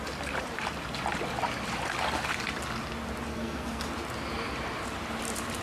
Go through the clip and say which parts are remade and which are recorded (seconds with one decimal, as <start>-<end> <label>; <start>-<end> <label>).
0.0-3.3 recorded; 3.3-3.8 remade; 3.8-5.6 recorded